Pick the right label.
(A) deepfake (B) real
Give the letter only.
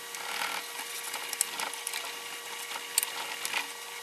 B